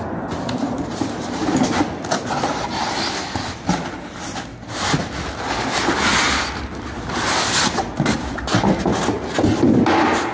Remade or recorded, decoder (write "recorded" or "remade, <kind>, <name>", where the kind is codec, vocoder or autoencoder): recorded